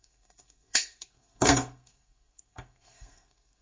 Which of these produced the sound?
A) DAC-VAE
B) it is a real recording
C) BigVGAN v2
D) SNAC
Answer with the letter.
D